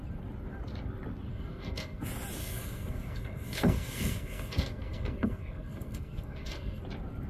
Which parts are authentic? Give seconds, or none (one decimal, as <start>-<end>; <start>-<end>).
0.0-1.3; 2.0-2.4; 6.8-7.3